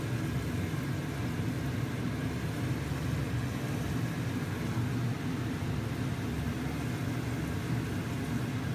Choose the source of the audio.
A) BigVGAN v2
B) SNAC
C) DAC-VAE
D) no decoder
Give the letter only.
D